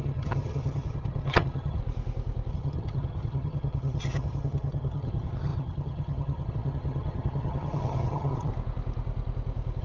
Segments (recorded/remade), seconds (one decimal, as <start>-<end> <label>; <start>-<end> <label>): 0.0-1.8 remade; 1.8-2.5 recorded; 2.5-8.5 remade; 8.5-9.8 recorded